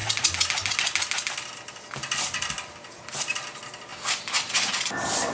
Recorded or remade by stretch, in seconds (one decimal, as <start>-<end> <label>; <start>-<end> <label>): 0.0-5.3 recorded